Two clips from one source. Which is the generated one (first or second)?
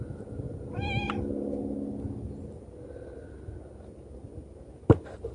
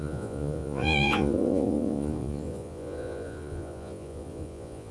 second